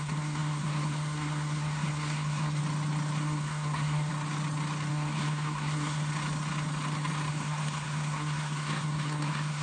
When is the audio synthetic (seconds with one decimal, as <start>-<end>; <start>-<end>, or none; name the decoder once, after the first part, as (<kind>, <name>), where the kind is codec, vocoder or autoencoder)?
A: 0.0-2.6 (codec, SNAC); 3.2-4.1; 4.9-6.1; 7.3-9.6